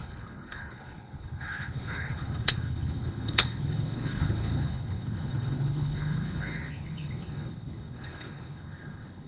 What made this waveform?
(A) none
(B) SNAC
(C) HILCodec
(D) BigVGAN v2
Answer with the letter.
C